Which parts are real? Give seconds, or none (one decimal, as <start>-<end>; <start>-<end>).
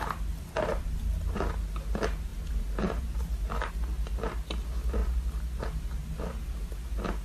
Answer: 0.0-2.3; 3.7-7.2